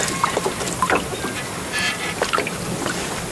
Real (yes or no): yes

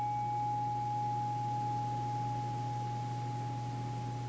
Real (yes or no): yes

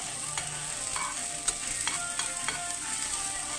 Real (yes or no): yes